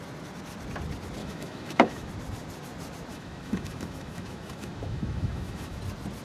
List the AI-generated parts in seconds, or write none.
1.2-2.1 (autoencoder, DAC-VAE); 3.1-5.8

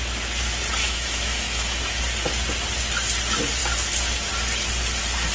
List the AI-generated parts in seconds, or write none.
0.8-2.0 (autoencoder, DAC-VAE)

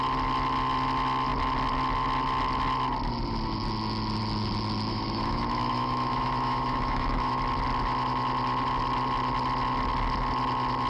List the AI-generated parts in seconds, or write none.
4.9-7.4 (autoencoder, DAC-VAE)

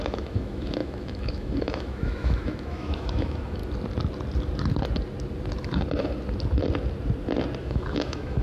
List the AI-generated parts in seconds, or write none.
0.0-3.6 (autoencoder, DAC-VAE); 7.6-8.4

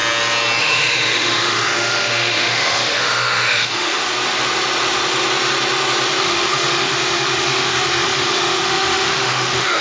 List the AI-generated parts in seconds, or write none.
0.6-4.0 (autoencoder, DAC-VAE); 6.2-9.8